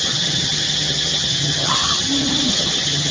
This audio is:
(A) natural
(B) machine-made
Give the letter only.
B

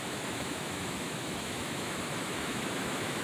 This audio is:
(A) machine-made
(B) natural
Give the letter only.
A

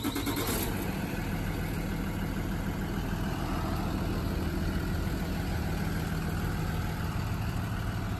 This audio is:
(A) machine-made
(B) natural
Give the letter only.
B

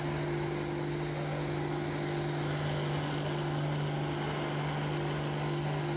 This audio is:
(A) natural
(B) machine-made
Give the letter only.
A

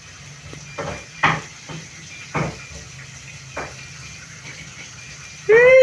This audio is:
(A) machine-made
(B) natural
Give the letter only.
B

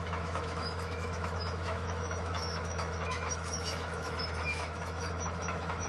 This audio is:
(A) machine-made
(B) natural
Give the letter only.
A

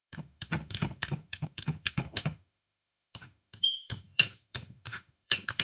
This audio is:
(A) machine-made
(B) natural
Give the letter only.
A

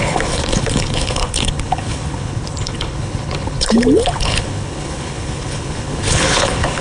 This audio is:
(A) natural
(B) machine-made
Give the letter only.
B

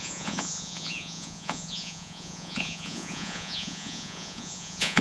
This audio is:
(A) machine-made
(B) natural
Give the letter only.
A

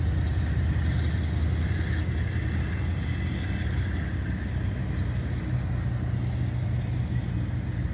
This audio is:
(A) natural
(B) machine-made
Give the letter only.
A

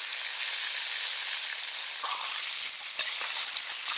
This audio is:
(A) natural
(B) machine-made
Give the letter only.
A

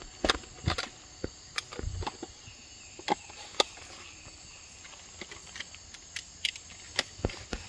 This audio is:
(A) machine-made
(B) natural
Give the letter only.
B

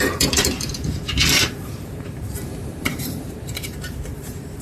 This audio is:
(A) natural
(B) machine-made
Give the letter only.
B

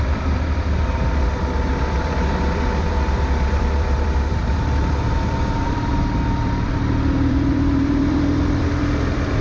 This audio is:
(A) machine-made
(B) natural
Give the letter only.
A